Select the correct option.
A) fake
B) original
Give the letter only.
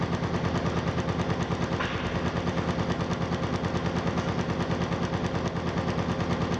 B